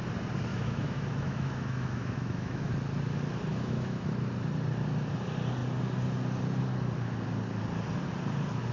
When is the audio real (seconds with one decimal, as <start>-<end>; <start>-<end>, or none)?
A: 0.0-0.5; 2.7-3.5; 4.1-8.7